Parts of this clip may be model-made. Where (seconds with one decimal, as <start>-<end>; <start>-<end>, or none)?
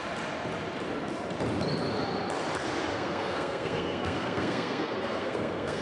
2.9-5.8